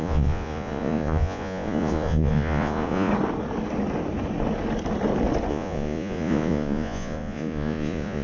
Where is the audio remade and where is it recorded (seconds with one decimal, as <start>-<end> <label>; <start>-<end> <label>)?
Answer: 0.0-3.1 remade; 3.1-5.5 recorded; 5.5-8.2 remade